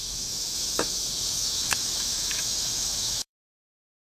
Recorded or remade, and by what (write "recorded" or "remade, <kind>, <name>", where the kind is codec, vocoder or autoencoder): remade, autoencoder, DAC-VAE